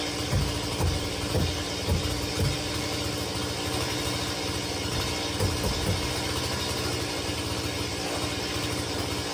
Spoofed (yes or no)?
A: no